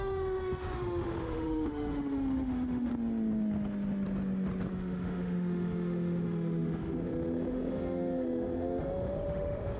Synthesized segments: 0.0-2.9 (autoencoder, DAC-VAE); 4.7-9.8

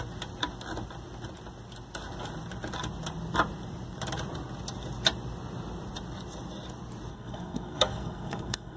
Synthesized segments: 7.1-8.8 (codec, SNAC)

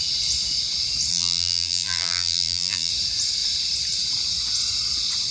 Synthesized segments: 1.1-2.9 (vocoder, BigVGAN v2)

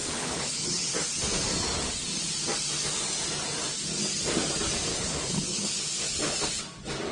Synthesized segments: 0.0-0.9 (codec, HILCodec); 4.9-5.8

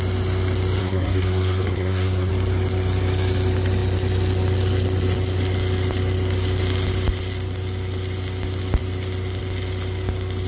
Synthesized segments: 0.8-2.3 (codec, SNAC)

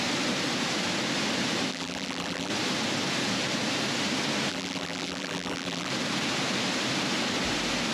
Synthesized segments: 1.7-2.5 (vocoder, BigVGAN v2); 4.5-5.9